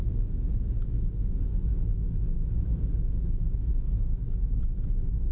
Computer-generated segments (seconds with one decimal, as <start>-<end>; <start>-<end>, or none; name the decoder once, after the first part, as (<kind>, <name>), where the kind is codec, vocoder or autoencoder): 0.0-1.1 (autoencoder, DAC-VAE); 1.9-4.6